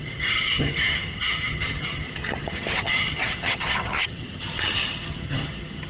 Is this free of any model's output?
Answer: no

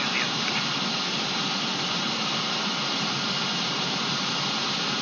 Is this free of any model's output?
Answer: yes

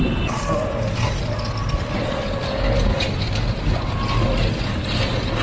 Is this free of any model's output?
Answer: yes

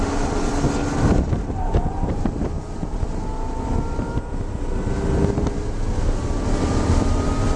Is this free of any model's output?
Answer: yes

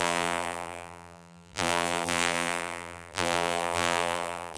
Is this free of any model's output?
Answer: no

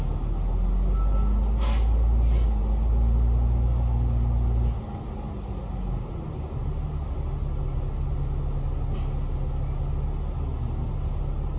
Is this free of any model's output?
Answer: yes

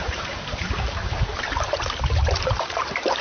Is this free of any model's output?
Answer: no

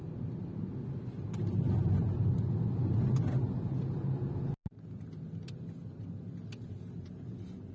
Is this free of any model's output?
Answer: yes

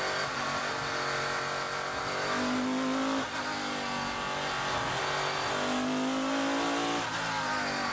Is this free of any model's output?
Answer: yes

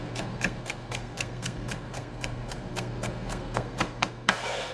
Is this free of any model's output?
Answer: no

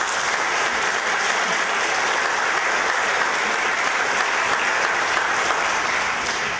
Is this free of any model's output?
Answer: yes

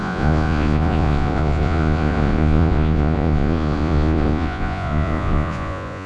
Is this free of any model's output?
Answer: no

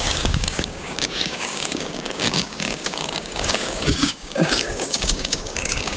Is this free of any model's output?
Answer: no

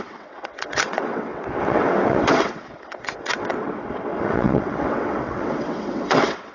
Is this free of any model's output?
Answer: no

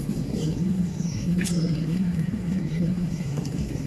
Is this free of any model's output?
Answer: no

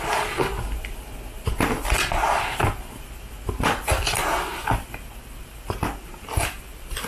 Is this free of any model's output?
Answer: yes